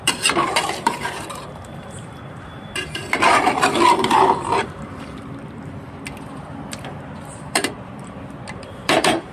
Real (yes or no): no